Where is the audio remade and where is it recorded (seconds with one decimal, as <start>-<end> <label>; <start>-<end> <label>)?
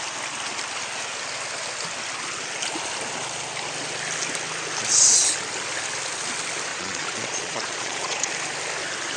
0.0-6.7 recorded; 6.7-8.3 remade; 8.3-9.2 recorded